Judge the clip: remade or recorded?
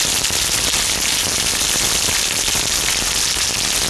recorded